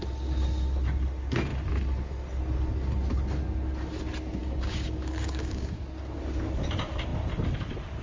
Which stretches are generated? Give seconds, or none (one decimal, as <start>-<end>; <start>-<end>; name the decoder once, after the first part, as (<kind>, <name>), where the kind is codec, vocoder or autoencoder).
4.4-5.8 (codec, DAC)